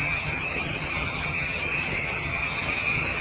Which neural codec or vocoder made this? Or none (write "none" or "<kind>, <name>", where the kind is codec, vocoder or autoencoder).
vocoder, HiFi-GAN